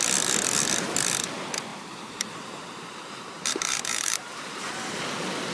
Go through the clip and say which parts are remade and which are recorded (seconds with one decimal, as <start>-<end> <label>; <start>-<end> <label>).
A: 0.0-1.7 recorded; 1.7-5.0 remade; 5.0-5.5 recorded